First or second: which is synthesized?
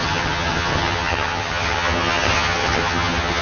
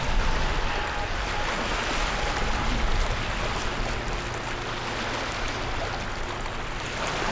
first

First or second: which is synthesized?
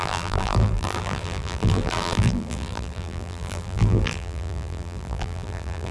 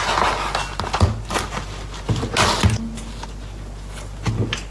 first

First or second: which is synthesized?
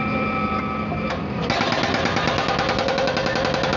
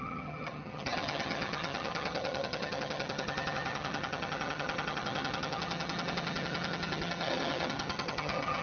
second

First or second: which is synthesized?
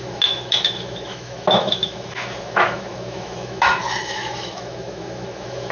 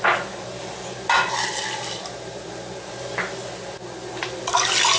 first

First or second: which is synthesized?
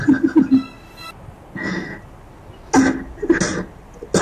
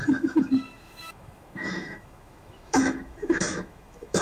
second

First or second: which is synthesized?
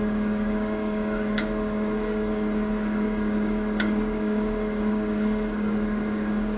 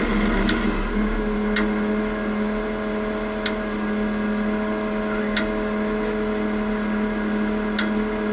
first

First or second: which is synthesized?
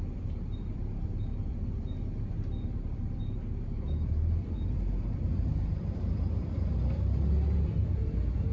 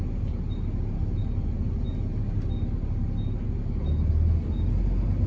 first